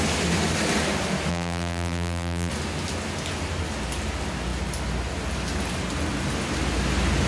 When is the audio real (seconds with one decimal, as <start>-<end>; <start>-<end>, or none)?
0.0-1.3; 2.5-7.3